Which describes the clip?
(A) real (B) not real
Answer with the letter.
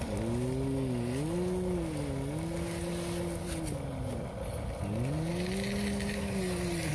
A